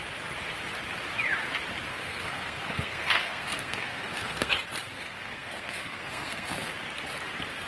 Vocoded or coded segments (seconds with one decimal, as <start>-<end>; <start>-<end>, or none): 1.9-4.5; 4.9-6.7